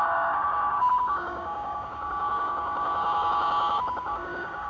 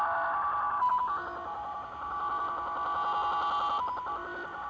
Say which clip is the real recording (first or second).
second